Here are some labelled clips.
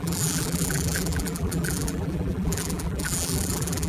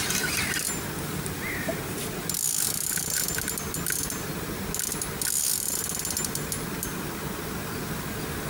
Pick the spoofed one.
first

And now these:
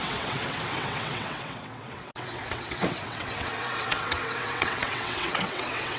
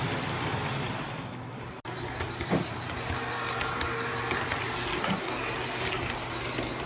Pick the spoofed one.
first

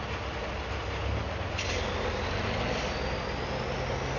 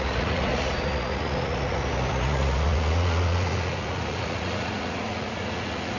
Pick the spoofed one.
second